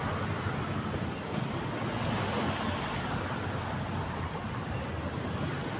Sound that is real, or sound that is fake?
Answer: real